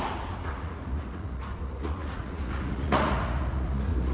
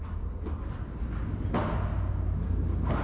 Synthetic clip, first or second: first